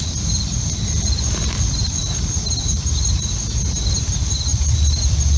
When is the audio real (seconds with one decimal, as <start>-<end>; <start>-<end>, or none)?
0.0-2.0; 3.2-4.5; 5.0-5.4